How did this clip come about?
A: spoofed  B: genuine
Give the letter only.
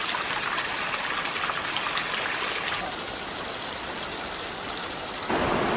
B